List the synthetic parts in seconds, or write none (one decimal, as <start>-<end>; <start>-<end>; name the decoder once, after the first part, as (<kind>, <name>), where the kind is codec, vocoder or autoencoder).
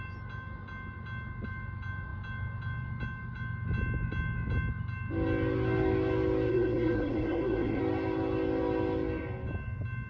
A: 6.5-7.8 (codec, SNAC)